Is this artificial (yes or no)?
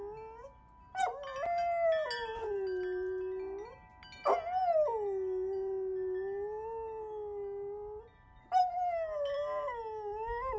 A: no